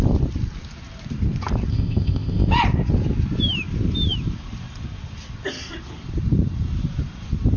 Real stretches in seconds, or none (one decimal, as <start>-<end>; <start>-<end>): 0.0-1.7; 2.5-7.6